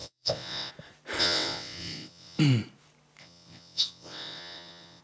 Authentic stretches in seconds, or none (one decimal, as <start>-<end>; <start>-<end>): 0.7-1.2; 2.4-3.2